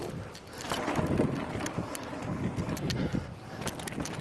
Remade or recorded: recorded